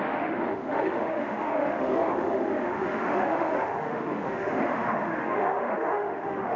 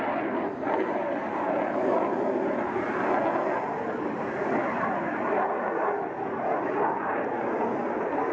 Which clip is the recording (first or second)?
second